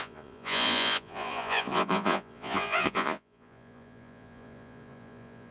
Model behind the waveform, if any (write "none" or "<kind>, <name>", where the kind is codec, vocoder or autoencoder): vocoder, Vocos